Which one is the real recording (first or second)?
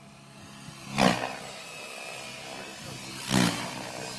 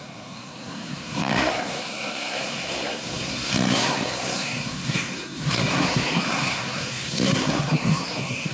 first